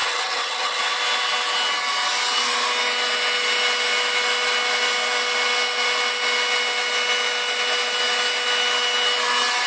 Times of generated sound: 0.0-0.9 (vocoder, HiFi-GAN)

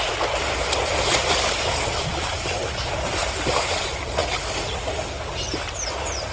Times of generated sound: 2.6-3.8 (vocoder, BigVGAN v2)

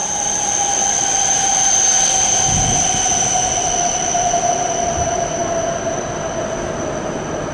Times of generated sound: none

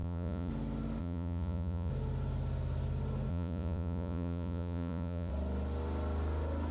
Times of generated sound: 0.0-0.5 (vocoder, Vocos); 1.0-1.9; 3.3-5.3

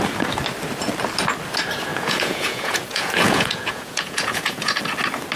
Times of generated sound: 1.9-4.8 (vocoder, Vocos)